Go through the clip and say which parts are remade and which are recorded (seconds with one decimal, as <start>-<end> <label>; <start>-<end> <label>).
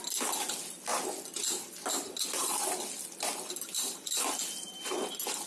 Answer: 0.0-0.9 recorded; 0.9-4.2 remade; 4.2-5.5 recorded